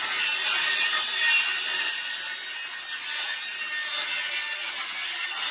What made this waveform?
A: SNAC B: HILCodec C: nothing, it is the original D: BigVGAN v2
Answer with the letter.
D